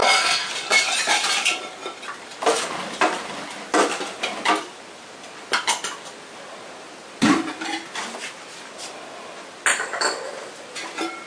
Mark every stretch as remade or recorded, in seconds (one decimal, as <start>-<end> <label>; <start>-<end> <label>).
0.0-0.5 remade; 0.5-11.3 recorded